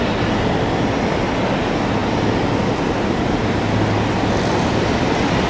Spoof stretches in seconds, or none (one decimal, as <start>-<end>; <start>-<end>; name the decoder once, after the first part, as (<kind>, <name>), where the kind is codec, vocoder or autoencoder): none